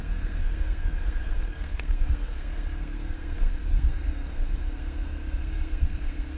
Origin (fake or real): fake